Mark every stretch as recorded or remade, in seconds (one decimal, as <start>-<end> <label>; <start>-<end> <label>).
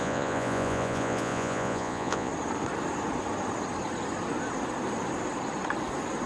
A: 0.0-2.3 remade; 2.3-6.3 recorded